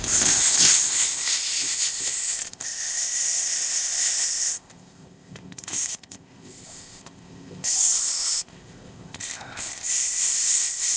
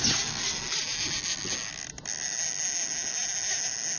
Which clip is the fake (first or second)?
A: first